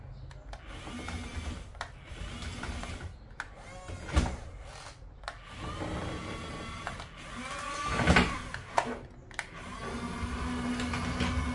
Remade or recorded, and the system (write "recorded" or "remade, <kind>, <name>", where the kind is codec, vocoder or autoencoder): recorded